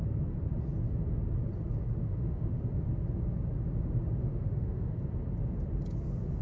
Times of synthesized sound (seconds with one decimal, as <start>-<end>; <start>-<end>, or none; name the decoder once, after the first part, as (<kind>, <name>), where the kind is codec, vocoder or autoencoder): 2.0-2.6 (autoencoder, DAC-VAE); 4.2-5.0